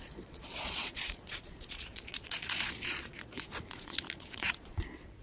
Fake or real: fake